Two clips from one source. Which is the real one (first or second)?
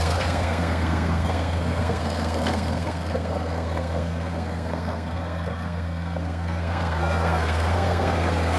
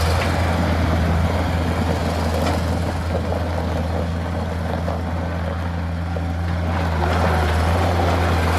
second